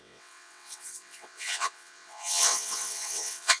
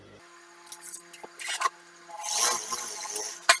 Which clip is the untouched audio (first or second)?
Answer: second